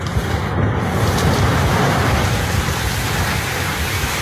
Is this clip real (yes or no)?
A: yes